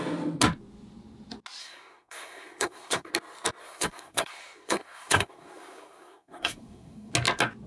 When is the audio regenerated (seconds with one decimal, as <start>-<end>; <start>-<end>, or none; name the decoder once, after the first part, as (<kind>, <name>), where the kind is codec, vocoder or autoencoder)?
1.6-3.1 (codec, SNAC); 3.6-7.1